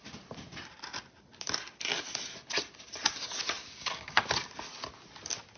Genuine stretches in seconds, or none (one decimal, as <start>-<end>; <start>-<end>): 0.0-3.6; 4.2-5.6